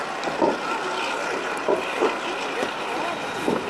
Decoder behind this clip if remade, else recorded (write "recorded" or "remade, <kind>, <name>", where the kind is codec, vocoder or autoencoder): recorded